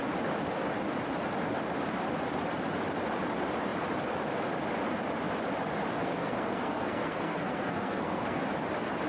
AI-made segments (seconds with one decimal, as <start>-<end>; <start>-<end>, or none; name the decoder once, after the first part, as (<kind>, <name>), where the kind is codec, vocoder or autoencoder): 6.0-8.4 (codec, SNAC)